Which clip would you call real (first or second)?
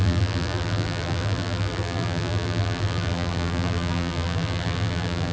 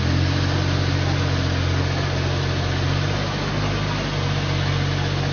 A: second